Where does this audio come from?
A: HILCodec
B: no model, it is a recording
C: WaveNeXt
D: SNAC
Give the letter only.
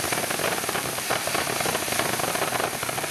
B